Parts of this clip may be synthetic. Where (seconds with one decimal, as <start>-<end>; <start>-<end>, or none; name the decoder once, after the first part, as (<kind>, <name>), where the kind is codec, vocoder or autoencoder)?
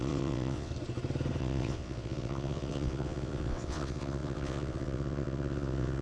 0.0-0.7 (vocoder, WaveNeXt); 1.4-6.0